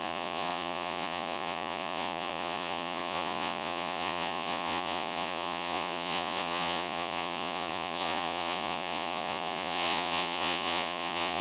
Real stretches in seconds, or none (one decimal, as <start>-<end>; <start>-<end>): none